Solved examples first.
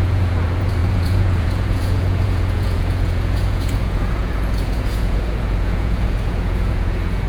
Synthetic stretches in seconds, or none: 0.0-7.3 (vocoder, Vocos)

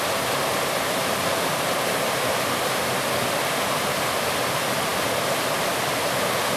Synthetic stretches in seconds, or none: none

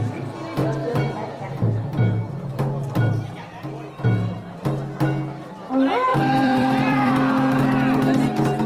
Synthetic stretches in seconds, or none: 0.6-1.5 (vocoder, BigVGAN v2); 6.1-7.1

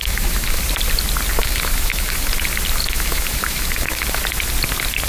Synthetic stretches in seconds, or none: 0.0-0.6 (autoencoder, DAC-VAE); 1.4-2.3; 2.8-4.2

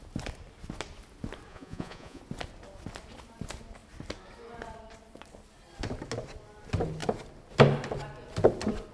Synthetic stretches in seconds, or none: 1.5-2.2 (vocoder, Vocos)

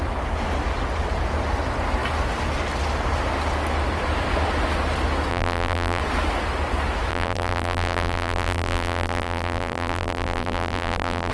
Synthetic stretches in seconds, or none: 5.3-6.0 (vocoder, BigVGAN v2); 7.1-11.3